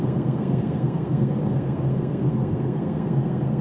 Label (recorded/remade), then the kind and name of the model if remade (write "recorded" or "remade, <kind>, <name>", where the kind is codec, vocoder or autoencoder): remade, codec, SNAC